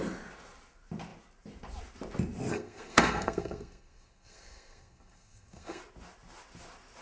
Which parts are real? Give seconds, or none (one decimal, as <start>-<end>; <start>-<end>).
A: 0.0-2.5; 5.8-7.0